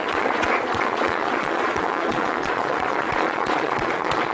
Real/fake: fake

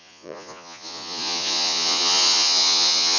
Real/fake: fake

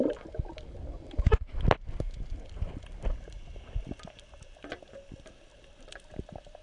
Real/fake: real